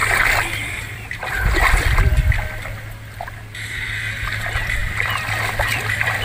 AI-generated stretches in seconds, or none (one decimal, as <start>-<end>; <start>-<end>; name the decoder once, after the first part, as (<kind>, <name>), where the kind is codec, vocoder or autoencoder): 0.7-2.1 (vocoder, BigVGAN v2); 3.1-6.2

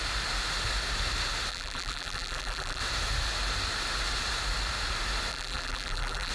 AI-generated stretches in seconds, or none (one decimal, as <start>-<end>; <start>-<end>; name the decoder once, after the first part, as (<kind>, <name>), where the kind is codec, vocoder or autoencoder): 1.5-2.8 (vocoder, BigVGAN v2); 5.3-6.3

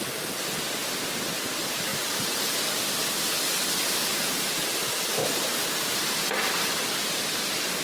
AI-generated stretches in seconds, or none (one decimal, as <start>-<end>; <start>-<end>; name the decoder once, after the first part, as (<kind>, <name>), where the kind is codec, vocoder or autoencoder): 1.9-2.6 (vocoder, BigVGAN v2); 5.2-6.2

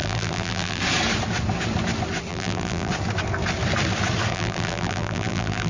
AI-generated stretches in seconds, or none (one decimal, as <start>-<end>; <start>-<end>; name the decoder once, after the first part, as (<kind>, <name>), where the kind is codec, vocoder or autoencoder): 0.0-0.8 (vocoder, BigVGAN v2); 2.3-2.9; 4.3-5.7

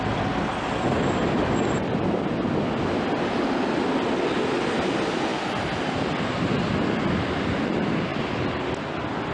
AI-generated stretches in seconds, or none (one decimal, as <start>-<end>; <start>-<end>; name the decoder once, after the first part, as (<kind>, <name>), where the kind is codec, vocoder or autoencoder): 8.1-8.7 (vocoder, BigVGAN v2)

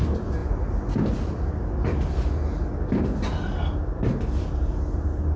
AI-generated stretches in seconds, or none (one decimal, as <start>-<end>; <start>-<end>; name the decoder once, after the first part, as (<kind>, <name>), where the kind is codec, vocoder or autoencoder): none

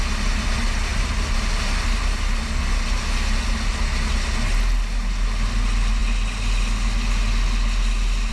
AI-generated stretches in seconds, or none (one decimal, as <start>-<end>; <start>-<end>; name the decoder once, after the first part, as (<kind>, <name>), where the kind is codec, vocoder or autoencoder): 0.9-1.5 (vocoder, BigVGAN v2)